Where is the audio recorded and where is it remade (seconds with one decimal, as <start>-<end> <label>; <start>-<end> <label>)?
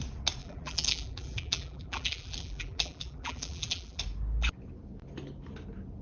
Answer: 0.0-0.4 recorded; 0.4-4.0 remade; 4.0-6.0 recorded